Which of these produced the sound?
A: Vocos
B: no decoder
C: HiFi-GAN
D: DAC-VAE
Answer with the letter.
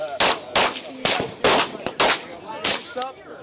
B